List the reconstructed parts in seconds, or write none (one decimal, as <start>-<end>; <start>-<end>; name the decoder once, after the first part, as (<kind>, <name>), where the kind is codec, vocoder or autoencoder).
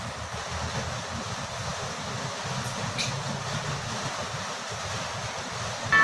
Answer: none